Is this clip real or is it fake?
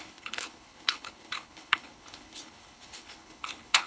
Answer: fake